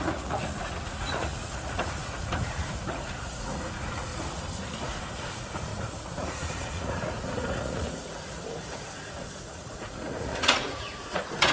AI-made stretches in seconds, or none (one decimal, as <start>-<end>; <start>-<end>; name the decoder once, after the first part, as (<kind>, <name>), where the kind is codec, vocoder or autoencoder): 0.0-4.1 (vocoder, Vocos); 4.8-11.5